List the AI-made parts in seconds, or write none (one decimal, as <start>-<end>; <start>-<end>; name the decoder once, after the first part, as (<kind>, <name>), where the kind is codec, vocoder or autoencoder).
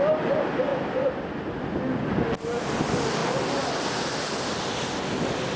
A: none